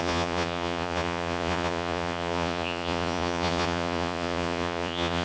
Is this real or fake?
fake